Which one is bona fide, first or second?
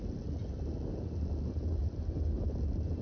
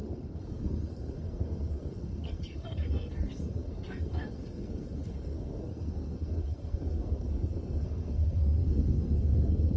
first